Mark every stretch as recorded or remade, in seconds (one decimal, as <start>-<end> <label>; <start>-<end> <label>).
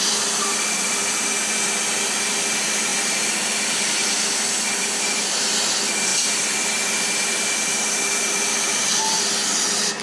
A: 0.0-10.0 recorded